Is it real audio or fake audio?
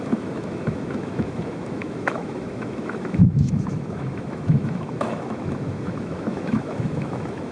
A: fake